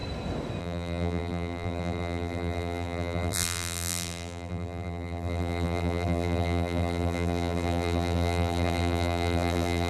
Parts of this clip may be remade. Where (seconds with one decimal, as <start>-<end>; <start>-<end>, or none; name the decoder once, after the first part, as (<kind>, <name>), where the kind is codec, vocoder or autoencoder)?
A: 0.6-9.9 (vocoder, BigVGAN v2)